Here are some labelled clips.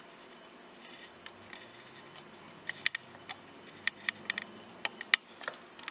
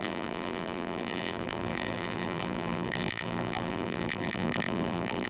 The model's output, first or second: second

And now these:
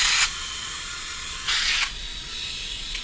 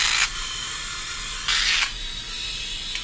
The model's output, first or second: first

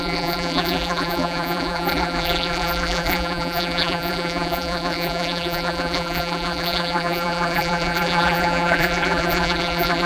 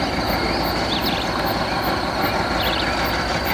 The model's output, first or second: first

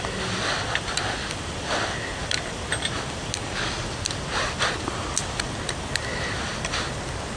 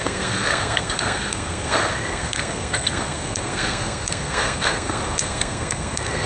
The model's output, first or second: second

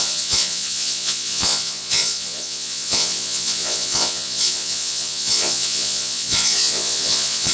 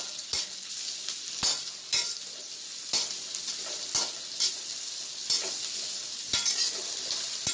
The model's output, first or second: first